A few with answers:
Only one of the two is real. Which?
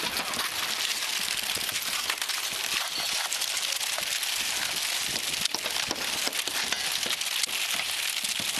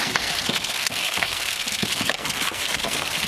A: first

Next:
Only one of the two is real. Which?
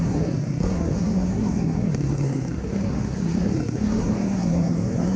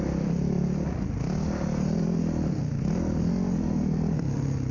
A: second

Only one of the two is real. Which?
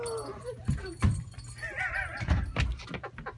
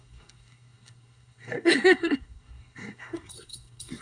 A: first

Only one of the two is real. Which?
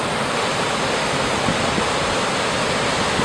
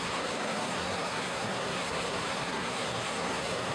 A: first